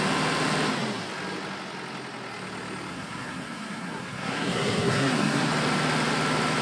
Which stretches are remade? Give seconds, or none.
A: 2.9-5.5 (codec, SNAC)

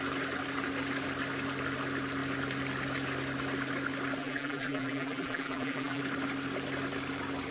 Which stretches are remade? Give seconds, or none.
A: 4.2-6.0 (vocoder, BigVGAN v2)

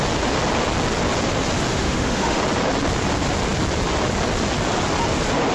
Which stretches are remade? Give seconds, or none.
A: 1.7-2.4 (autoencoder, DAC-VAE)

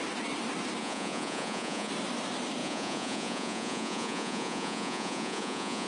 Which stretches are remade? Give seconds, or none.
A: 0.8-1.9 (vocoder, Vocos); 2.6-5.9

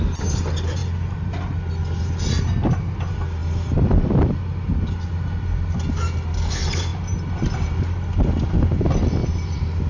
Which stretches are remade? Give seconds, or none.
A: 0.8-2.0 (vocoder, BigVGAN v2); 3.4-4.1; 9.2-9.9

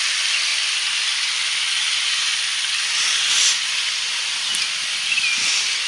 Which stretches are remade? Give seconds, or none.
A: none

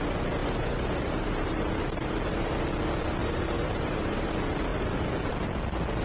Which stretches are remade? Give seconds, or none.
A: 0.4-2.6 (vocoder, BigVGAN v2); 3.2-4.3; 4.7-5.3

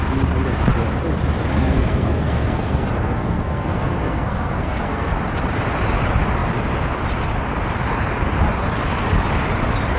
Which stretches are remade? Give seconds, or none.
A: 1.5-5.1 (codec, SNAC)